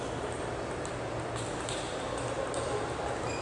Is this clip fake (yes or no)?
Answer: no